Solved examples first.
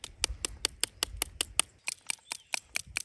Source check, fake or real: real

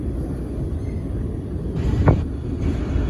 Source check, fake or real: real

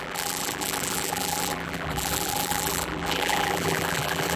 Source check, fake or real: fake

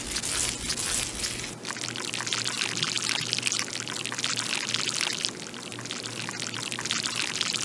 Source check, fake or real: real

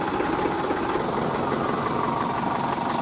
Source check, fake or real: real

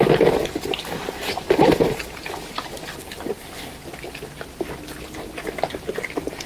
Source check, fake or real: real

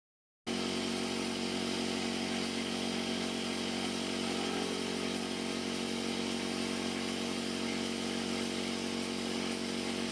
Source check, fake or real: real